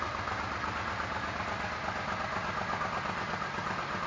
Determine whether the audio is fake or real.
real